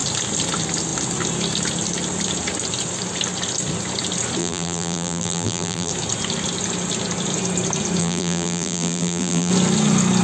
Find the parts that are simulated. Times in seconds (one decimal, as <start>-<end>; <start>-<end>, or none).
4.4-5.9; 8.0-9.5